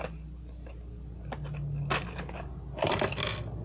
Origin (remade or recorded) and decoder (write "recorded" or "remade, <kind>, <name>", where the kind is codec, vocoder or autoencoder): recorded